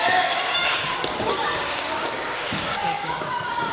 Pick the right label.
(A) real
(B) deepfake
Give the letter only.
B